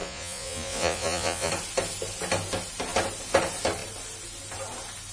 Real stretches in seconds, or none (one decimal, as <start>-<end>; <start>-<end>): 1.5-5.1